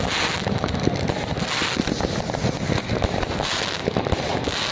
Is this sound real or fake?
real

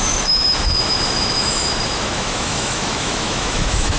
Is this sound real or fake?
fake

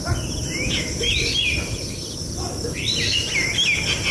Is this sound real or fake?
real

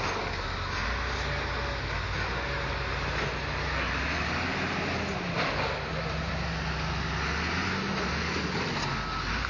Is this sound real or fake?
real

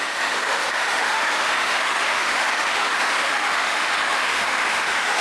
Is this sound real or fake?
fake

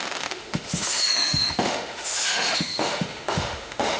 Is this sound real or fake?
fake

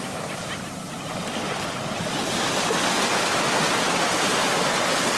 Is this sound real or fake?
real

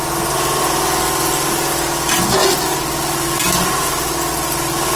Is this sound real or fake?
real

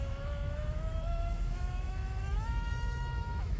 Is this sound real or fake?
fake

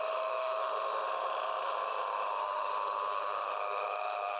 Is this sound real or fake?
fake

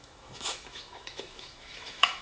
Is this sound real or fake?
fake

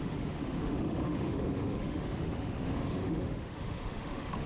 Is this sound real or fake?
fake